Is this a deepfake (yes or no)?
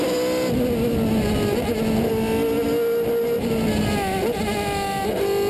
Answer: no